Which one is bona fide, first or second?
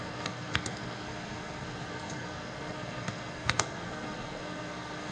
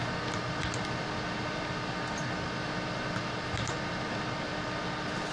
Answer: second